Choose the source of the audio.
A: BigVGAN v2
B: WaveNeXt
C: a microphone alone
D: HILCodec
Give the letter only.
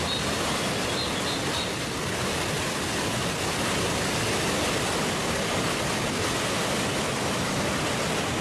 C